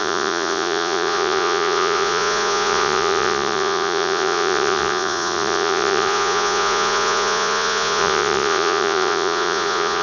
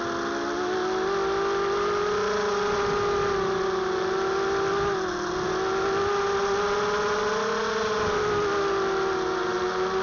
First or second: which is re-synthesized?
first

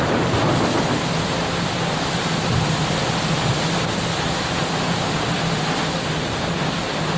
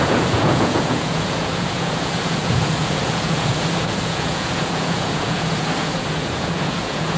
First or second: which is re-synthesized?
second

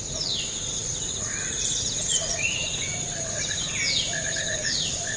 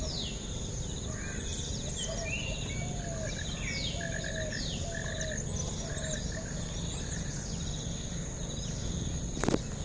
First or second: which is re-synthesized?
first